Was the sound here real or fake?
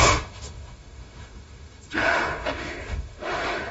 fake